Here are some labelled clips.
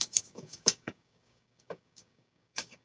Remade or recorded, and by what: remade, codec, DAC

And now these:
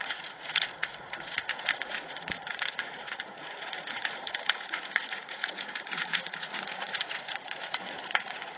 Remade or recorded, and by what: remade, vocoder, Vocos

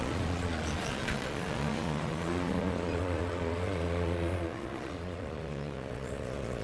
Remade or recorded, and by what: remade, vocoder, Vocos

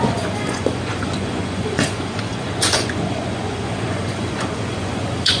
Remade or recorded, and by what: remade, vocoder, Vocos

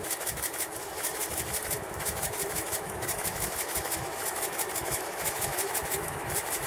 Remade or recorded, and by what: remade, autoencoder, DAC-VAE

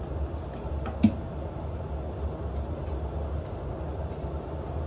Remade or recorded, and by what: recorded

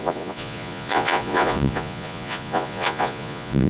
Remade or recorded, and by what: remade, vocoder, Vocos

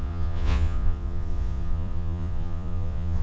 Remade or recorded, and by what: remade, vocoder, Vocos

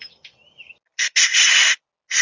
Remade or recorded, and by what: recorded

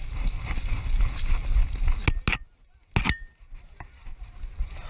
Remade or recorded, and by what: recorded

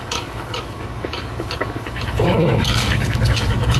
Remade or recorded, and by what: remade, codec, DAC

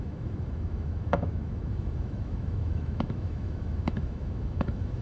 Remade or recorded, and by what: remade, autoencoder, DAC-VAE